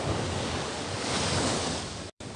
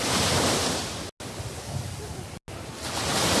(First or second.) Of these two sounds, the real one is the second